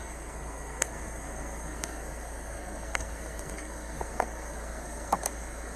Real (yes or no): no